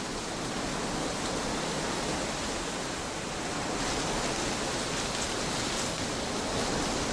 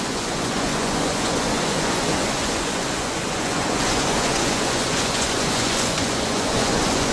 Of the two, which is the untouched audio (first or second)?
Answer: first